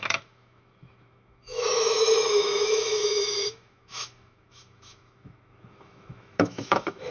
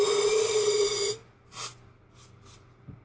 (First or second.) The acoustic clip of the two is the second